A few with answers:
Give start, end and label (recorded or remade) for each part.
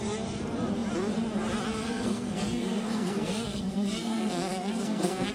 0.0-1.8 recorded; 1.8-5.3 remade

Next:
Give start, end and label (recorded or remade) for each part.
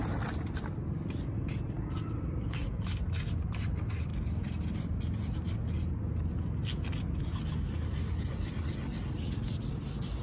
0.0-10.2 recorded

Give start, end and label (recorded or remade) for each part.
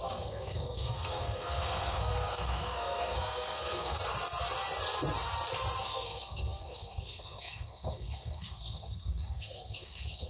0.0-4.0 remade; 4.0-5.8 recorded; 5.8-10.3 remade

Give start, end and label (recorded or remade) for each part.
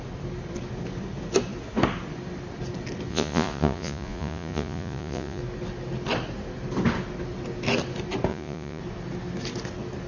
0.0-3.1 recorded; 3.1-5.4 remade; 5.4-8.3 recorded; 8.3-8.8 remade; 8.8-10.1 recorded